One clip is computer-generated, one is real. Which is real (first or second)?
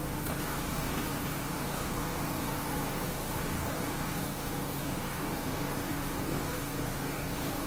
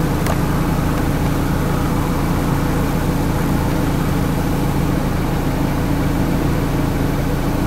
second